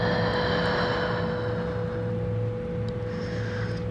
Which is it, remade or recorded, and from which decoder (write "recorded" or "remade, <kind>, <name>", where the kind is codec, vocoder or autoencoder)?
recorded